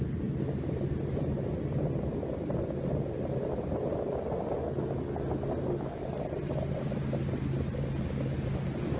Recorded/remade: recorded